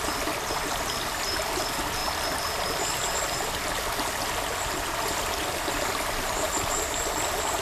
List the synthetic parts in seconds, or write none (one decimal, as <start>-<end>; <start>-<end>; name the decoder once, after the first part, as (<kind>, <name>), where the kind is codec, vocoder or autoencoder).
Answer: none